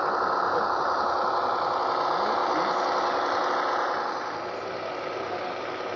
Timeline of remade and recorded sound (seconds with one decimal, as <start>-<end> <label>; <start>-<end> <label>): 0.0-6.0 recorded